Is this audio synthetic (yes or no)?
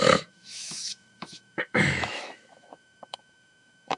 yes